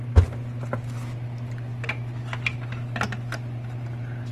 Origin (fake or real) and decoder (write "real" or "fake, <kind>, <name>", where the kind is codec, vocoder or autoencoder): real